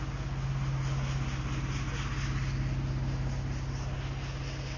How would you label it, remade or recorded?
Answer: recorded